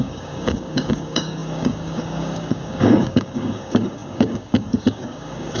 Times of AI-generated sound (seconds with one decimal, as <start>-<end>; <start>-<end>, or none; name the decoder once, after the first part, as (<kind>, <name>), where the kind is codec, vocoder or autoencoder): 0.0-5.6 (codec, DAC)